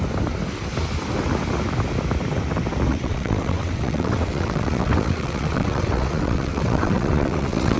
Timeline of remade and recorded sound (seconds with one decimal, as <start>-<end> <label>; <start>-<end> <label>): 0.0-2.9 recorded; 2.9-7.8 remade